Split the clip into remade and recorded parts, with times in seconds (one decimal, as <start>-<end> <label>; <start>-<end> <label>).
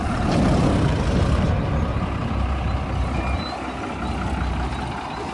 0.0-1.5 remade; 1.5-5.3 recorded